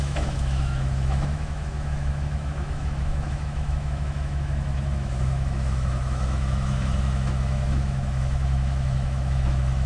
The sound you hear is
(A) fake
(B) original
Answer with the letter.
A